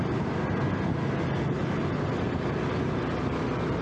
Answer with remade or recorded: recorded